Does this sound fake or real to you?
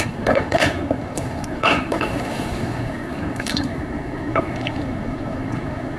fake